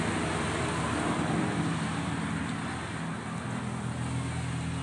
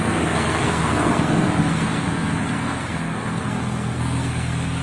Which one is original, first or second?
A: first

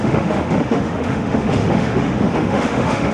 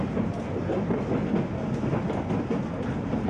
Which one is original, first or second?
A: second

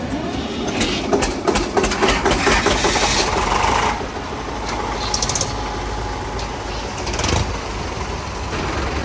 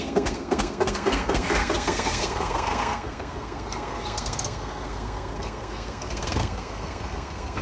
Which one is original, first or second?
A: first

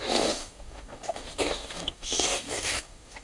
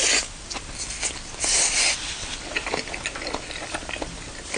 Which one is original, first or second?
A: second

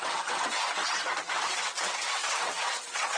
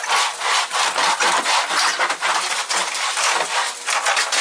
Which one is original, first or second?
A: second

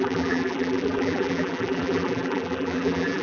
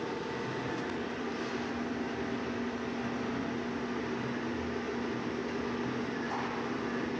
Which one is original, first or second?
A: second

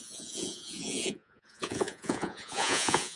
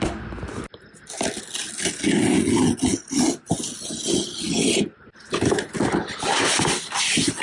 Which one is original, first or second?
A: second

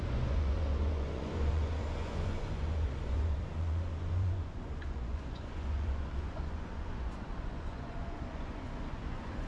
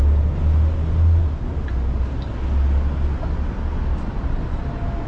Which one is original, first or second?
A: second